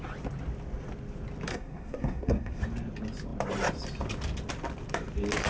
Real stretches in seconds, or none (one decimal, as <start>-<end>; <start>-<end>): 0.0-1.5; 2.6-5.5